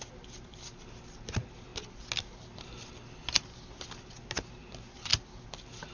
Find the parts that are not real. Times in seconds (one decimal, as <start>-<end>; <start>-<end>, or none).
none